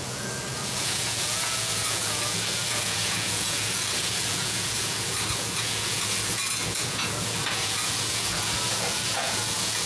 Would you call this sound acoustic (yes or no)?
no